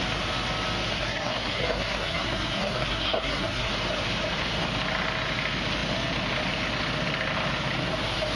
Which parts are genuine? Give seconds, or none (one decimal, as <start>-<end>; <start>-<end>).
0.0-0.9; 3.7-8.4